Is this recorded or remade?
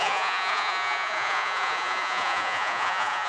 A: remade